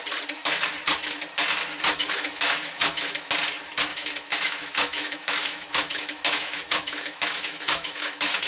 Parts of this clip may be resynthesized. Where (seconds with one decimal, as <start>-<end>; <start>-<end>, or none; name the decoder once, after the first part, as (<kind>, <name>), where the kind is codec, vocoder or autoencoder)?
2.0-3.3 (autoencoder, DAC-VAE); 3.9-8.5